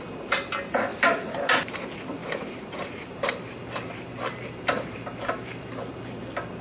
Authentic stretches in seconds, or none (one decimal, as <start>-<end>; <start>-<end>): 0.0-0.9; 1.4-2.2; 6.0-6.6